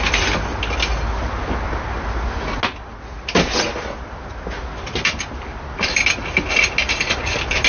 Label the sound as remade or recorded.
recorded